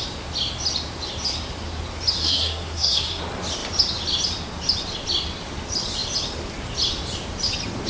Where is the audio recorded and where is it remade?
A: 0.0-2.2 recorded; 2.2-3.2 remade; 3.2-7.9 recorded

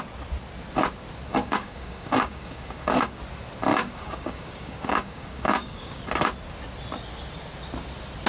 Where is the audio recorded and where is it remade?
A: 0.0-1.3 recorded; 1.3-3.2 remade; 3.2-3.7 recorded; 3.7-6.0 remade; 6.0-8.3 recorded

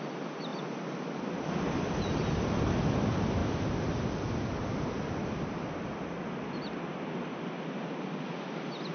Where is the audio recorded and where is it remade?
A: 0.0-8.9 recorded

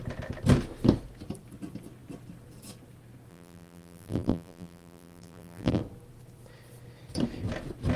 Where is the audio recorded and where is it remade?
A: 0.0-3.3 recorded; 3.3-5.8 remade; 5.8-8.0 recorded